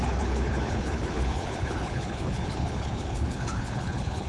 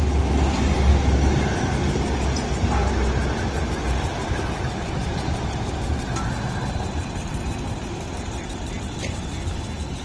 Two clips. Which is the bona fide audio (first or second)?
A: second